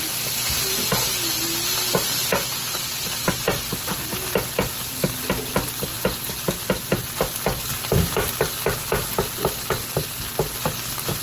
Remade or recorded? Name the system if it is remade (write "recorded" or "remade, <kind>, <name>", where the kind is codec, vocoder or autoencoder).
recorded